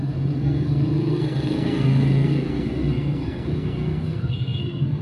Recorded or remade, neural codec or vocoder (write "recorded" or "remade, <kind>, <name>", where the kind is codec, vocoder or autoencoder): remade, codec, SNAC